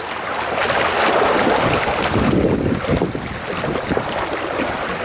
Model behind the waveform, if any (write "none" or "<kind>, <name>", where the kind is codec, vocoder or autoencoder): none